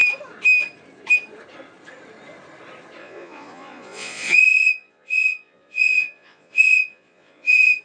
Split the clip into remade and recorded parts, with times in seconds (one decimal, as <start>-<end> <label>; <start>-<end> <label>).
0.0-3.0 recorded; 3.0-7.8 remade